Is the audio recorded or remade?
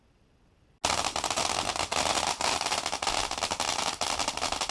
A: recorded